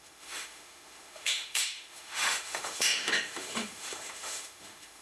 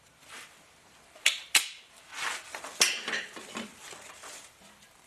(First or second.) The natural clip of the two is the second